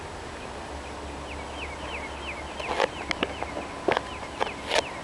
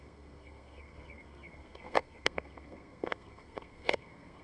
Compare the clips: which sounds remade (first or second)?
second